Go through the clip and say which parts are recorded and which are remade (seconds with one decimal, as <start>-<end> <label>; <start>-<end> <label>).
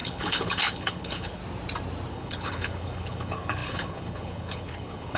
0.0-1.4 remade; 1.4-2.1 recorded; 2.1-5.2 remade